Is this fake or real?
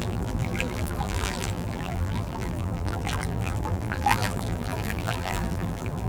fake